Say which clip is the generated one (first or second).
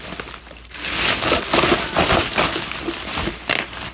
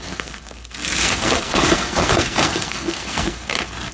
second